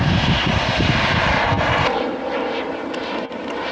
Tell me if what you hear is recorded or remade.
recorded